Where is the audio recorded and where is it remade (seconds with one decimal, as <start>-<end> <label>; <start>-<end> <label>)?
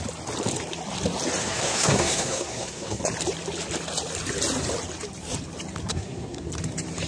0.0-1.4 recorded; 1.4-3.0 remade; 3.0-5.9 recorded; 5.9-6.5 remade; 6.5-7.1 recorded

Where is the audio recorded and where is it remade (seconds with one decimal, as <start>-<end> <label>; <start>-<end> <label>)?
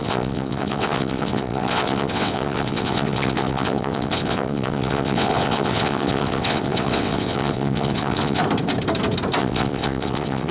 0.0-8.4 remade; 8.4-9.4 recorded; 9.4-10.5 remade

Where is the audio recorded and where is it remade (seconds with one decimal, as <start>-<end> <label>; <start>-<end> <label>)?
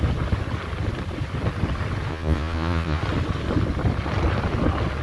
0.0-2.1 recorded; 2.1-3.0 remade; 3.0-5.0 recorded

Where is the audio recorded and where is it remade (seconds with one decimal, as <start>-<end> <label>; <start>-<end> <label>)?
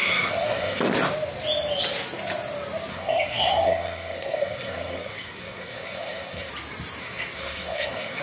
0.0-0.8 remade; 0.8-2.9 recorded; 2.9-6.5 remade; 6.5-7.0 recorded; 7.0-8.2 remade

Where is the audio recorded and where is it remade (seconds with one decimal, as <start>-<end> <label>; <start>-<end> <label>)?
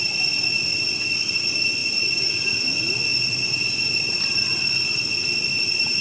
0.0-6.0 recorded